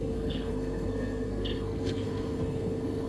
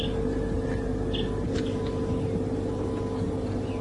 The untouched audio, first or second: second